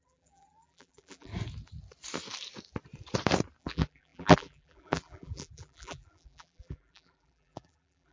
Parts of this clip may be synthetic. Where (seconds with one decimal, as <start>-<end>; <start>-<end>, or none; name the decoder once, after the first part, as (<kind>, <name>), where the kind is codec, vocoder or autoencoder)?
0.0-1.3 (vocoder, BigVGAN v2); 3.6-8.1